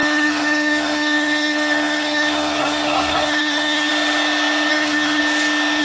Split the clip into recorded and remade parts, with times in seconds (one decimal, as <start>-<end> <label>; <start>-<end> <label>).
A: 0.0-3.9 remade; 3.9-4.7 recorded; 4.7-5.2 remade; 5.2-5.8 recorded